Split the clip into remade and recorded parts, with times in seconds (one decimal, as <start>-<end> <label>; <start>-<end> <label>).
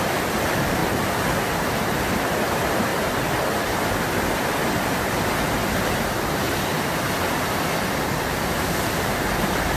0.0-0.8 remade; 0.8-1.7 recorded; 1.7-2.9 remade; 2.9-8.0 recorded; 8.0-9.8 remade